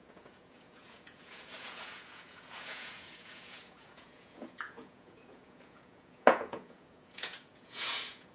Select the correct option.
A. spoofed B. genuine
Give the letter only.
A